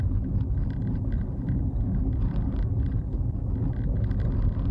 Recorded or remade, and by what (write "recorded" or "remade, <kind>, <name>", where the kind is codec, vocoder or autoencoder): recorded